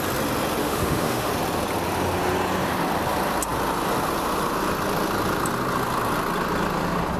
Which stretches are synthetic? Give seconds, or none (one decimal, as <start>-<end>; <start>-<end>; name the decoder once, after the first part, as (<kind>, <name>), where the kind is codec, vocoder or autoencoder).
0.6-1.3 (autoencoder, DAC-VAE)